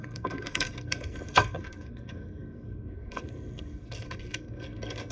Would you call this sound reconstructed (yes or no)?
yes